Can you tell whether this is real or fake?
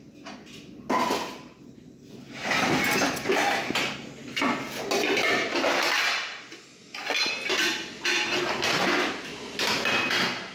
real